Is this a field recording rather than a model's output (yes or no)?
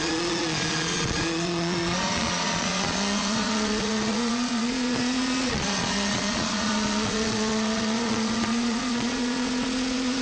no